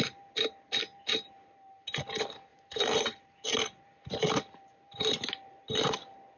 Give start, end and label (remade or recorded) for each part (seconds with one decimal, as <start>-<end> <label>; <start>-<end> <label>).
0.0-2.5 recorded; 2.5-5.3 remade; 5.3-6.4 recorded